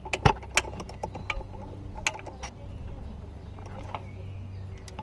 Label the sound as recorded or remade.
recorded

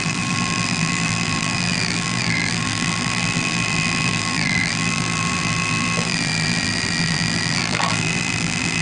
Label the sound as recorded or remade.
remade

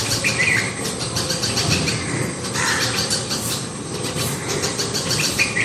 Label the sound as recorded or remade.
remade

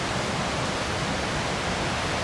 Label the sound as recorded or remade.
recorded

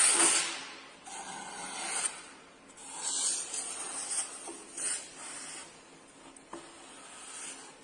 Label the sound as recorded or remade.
recorded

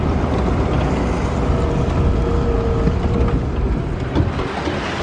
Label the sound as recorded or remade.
recorded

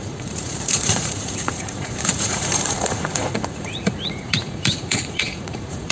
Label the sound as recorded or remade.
remade